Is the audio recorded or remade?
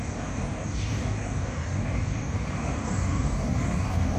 remade